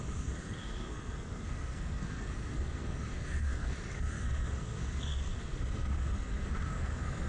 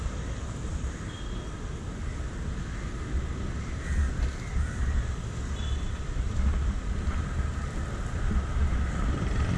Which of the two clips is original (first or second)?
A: second